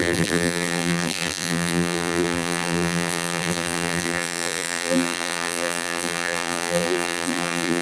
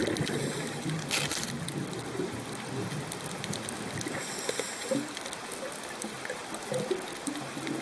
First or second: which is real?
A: second